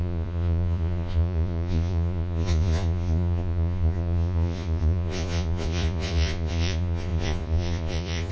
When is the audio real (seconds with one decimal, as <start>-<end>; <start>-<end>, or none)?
none